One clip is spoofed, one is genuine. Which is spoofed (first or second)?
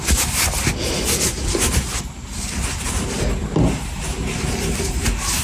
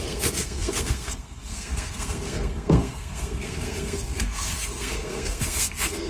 second